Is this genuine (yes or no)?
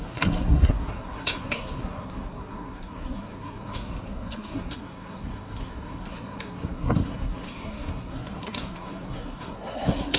no